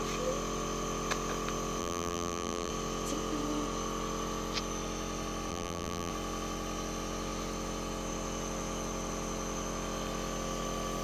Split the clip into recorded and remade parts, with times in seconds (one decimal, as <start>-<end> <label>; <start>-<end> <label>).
0.0-1.8 recorded; 1.8-2.7 remade; 2.7-5.5 recorded; 5.5-6.1 remade; 6.1-11.0 recorded